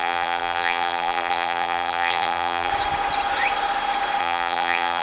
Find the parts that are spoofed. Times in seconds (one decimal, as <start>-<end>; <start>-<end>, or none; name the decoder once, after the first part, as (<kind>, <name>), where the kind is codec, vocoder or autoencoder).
0.0-2.7 (vocoder, BigVGAN v2); 4.2-5.0